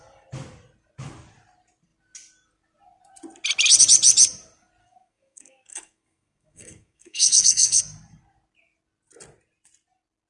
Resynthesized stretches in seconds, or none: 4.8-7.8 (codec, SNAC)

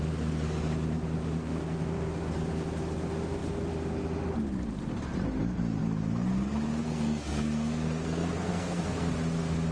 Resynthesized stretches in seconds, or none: 1.4-2.1 (codec, SNAC); 6.8-9.1

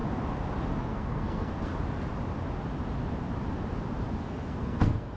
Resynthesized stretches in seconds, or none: 0.8-1.7 (codec, SNAC); 4.2-5.2

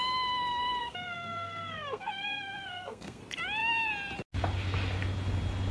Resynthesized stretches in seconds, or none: 0.8-3.2 (codec, SNAC)